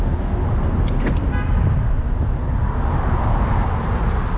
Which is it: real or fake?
real